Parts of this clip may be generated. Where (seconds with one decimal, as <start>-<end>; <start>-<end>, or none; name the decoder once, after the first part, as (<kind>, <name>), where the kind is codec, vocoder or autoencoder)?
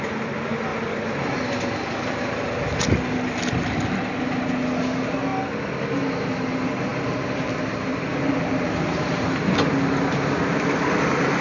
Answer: 0.7-1.2 (vocoder, BigVGAN v2); 6.9-9.1